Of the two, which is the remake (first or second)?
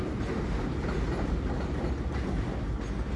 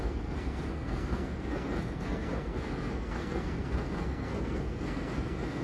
second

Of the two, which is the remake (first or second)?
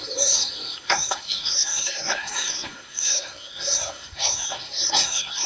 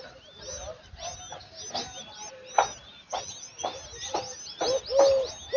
first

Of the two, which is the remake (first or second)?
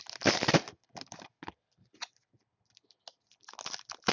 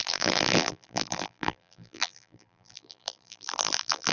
second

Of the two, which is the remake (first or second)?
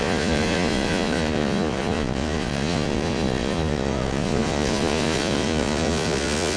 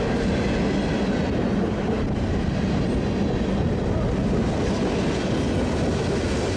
first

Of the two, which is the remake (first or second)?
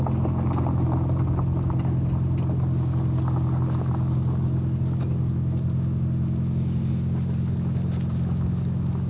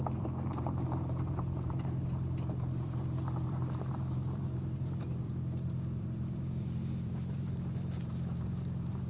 second